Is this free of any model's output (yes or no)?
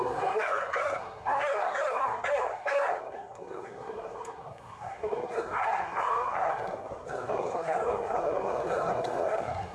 no